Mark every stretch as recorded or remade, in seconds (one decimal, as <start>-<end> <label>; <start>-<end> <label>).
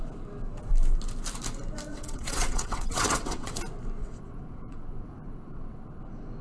0.0-1.9 recorded; 1.9-3.6 remade; 3.6-4.0 recorded; 4.0-6.0 remade; 6.0-6.4 recorded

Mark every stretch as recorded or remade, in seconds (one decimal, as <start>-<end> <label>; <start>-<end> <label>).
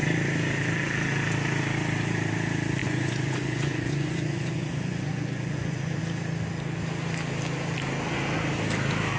0.0-2.8 recorded; 2.8-6.0 remade; 6.0-9.2 recorded